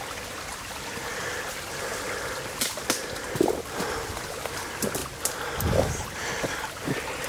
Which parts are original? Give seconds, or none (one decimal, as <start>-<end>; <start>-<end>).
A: 0.0-7.3